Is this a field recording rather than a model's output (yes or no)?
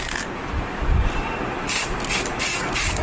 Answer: yes